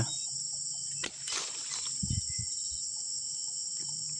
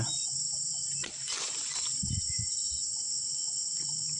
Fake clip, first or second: second